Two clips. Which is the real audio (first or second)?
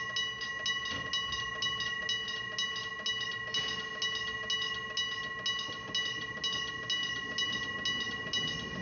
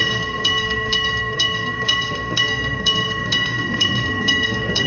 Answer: first